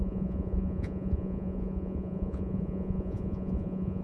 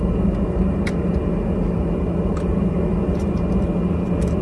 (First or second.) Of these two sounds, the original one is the second